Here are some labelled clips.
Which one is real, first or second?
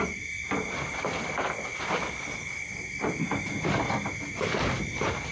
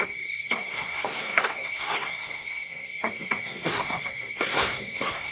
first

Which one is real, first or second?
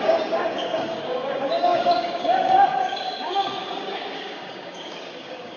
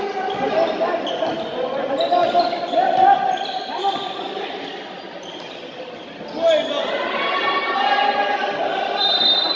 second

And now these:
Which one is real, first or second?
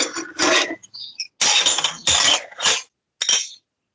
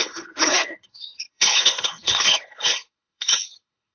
first